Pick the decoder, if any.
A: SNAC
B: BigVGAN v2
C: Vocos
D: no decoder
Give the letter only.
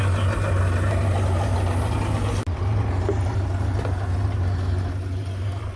D